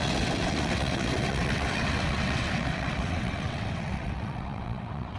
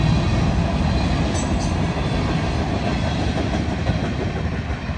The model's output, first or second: first